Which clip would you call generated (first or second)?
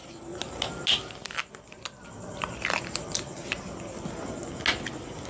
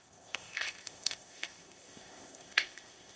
second